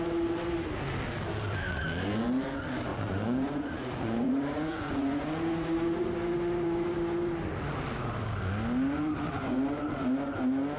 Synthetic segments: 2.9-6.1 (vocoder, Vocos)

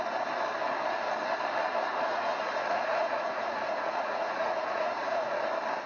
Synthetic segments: 1.9-5.4 (vocoder, Vocos)